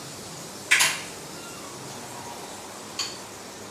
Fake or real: real